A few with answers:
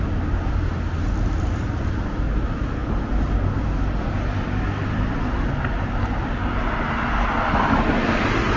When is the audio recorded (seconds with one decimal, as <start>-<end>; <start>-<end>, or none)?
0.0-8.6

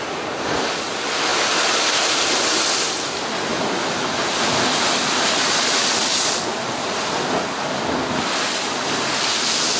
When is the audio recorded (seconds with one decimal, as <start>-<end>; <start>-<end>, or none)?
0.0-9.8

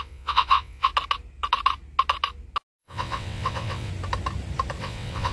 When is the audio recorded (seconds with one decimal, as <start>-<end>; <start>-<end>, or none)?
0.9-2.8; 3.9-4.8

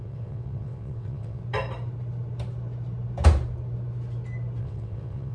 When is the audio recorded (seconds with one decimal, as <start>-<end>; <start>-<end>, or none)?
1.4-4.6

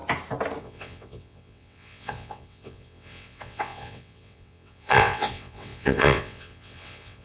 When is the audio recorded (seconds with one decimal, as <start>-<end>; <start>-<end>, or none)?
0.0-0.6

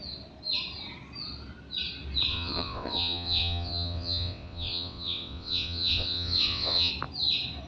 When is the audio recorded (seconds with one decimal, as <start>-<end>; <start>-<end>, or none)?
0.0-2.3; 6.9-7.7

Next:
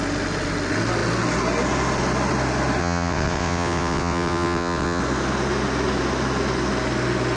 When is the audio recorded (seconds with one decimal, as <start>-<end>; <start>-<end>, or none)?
0.0-2.8; 5.0-7.4